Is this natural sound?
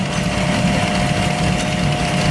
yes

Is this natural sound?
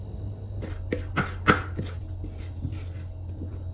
yes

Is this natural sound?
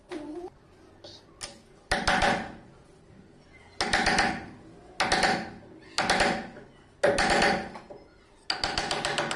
yes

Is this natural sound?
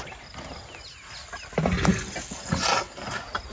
yes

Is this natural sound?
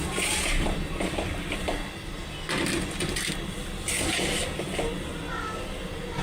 yes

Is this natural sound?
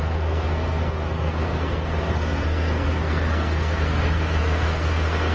no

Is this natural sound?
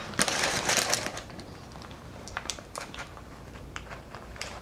no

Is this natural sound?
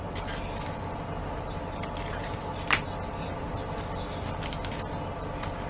yes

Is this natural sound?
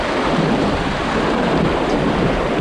no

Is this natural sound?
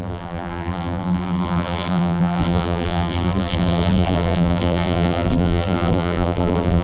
no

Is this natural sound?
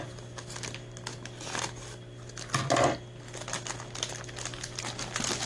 yes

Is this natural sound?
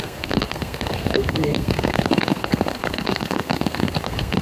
no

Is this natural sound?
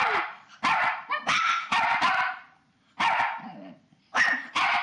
no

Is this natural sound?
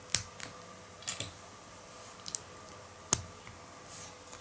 yes